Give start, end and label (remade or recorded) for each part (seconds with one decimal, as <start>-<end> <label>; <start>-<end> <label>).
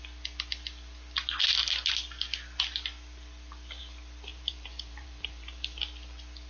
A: 0.0-4.3 recorded; 4.3-5.8 remade; 5.8-6.5 recorded